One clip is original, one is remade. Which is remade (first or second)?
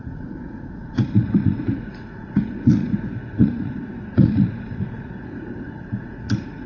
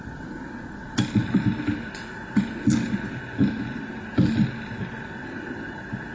first